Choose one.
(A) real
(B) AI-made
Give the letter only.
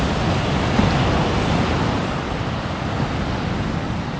A